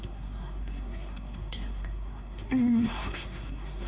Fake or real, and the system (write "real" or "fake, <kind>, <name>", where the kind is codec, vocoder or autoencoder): fake, codec, SNAC